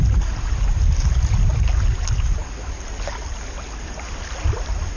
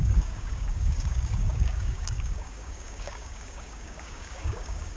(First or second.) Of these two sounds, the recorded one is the first